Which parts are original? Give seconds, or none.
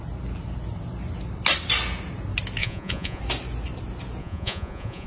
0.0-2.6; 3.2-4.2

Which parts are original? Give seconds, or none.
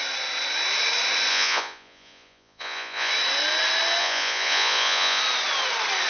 0.0-1.3; 3.1-4.0; 5.2-6.1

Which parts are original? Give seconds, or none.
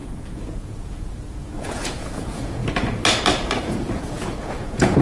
2.6-3.7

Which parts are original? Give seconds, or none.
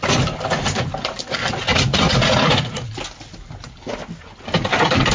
0.0-1.7; 2.9-5.1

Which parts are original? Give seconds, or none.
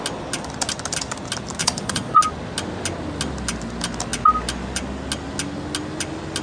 0.0-1.6; 2.2-6.4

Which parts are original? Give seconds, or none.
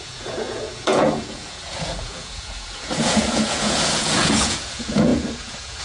none